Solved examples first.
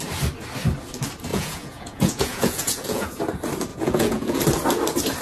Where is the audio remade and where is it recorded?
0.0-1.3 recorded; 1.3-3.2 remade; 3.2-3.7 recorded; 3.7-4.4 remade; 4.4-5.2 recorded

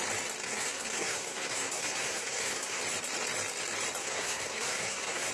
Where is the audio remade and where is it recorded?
0.0-0.4 recorded; 0.4-2.8 remade; 2.8-4.0 recorded; 4.0-5.3 remade

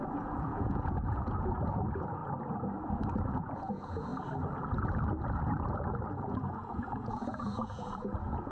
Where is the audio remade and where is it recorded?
0.0-2.2 remade; 2.2-3.3 recorded; 3.3-4.1 remade; 4.1-6.2 recorded; 6.2-8.5 remade

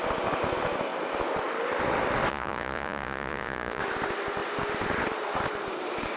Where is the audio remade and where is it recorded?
0.0-2.3 recorded; 2.3-3.8 remade; 3.8-6.2 recorded

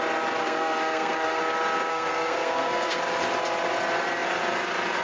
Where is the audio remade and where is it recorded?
0.0-0.4 recorded; 0.4-1.4 remade; 1.4-1.9 recorded; 1.9-3.0 remade; 3.0-5.0 recorded

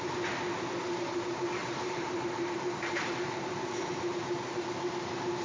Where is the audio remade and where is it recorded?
0.0-1.6 recorded; 1.6-4.0 remade; 4.0-5.4 recorded